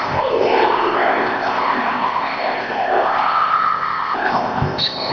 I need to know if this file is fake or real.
fake